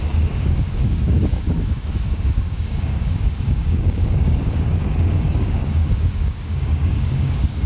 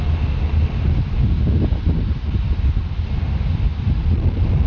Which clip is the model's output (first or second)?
first